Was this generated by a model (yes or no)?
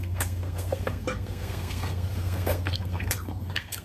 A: yes